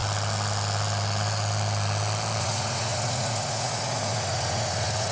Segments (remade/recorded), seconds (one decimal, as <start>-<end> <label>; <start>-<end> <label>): 0.0-2.4 recorded; 2.4-5.1 remade